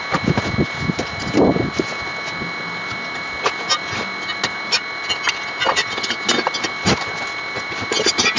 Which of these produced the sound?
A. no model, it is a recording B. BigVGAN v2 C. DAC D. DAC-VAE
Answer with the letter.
A